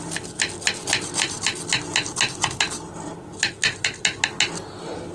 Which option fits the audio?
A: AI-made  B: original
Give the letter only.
B